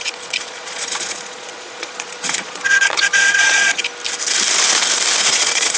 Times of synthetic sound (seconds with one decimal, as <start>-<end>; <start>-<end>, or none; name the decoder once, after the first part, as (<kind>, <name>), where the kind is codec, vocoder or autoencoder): 0.0-3.8 (vocoder, Vocos); 5.3-5.8